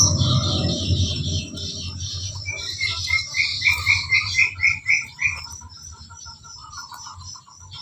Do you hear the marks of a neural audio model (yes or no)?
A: yes